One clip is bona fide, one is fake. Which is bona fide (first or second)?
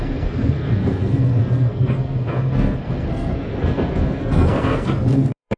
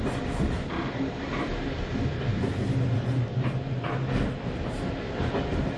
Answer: second